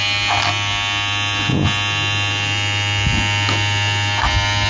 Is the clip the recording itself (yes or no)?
yes